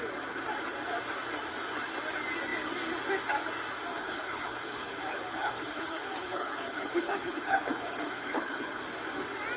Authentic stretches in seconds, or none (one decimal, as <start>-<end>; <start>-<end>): 0.0-3.9; 8.8-9.6